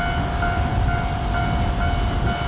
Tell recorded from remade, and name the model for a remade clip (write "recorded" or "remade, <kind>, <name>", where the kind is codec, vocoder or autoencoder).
recorded